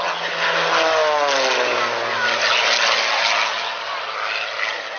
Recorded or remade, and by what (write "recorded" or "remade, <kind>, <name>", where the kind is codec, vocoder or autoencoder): recorded